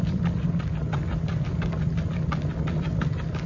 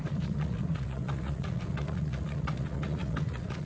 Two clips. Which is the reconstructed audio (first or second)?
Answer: second